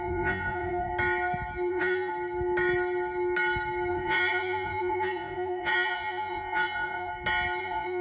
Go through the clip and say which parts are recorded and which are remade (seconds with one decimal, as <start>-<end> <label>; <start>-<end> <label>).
0.0-0.9 remade; 0.9-1.7 recorded; 1.7-2.1 remade; 2.1-3.9 recorded; 3.9-7.1 remade; 7.1-7.6 recorded; 7.6-8.0 remade